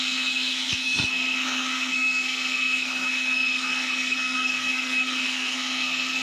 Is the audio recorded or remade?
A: remade